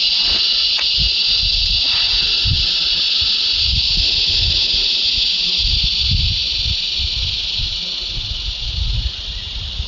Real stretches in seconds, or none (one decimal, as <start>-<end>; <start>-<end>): 0.0-7.6; 9.5-9.9